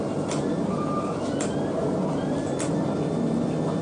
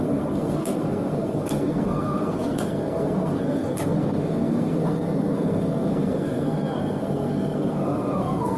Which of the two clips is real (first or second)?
first